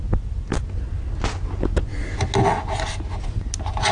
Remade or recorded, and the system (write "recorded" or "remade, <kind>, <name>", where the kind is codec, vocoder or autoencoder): recorded